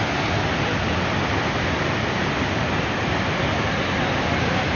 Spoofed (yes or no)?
no